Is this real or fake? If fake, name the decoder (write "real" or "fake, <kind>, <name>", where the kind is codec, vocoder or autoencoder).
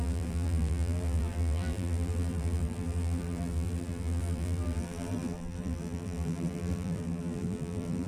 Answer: fake, vocoder, BigVGAN v2